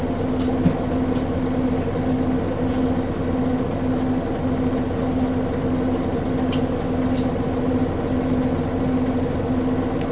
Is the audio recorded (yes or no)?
yes